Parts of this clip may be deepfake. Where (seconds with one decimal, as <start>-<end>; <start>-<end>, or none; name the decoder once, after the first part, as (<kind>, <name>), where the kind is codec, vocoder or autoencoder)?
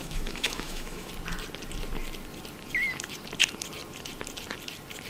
0.0-1.1 (autoencoder, DAC-VAE)